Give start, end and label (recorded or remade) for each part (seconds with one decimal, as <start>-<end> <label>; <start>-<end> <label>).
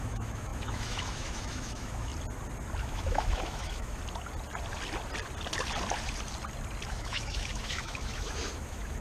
0.0-2.1 remade; 2.1-2.8 recorded; 2.8-4.0 remade; 4.0-6.9 recorded; 6.9-9.0 remade